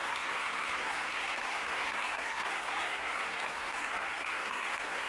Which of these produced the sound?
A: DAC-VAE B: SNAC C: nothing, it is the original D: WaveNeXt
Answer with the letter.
B